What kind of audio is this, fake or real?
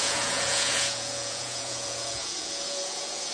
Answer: fake